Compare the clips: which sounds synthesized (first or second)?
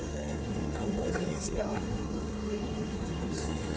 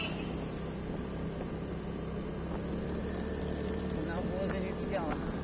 first